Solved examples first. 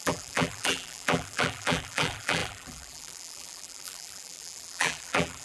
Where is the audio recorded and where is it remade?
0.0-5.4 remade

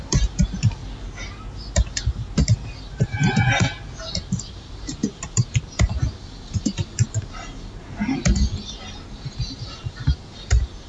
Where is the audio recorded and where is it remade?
0.0-0.8 remade; 0.8-4.5 recorded; 4.5-10.9 remade

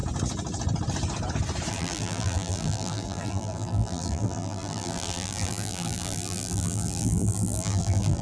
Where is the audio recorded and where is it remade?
0.0-1.7 recorded; 1.7-8.2 remade

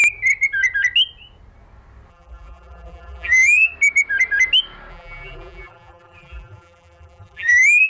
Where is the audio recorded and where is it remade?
0.0-2.1 recorded; 2.1-3.7 remade; 3.7-4.9 recorded; 4.9-7.9 remade

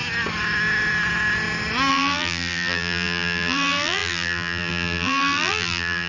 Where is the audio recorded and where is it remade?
0.0-1.9 recorded; 1.9-6.1 remade

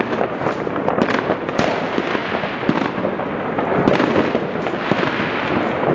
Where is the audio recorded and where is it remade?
0.0-5.9 recorded